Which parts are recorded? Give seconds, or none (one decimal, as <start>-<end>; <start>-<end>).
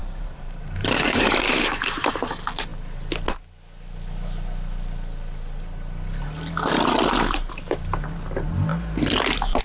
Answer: 2.1-9.6